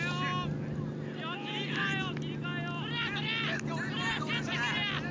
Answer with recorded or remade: recorded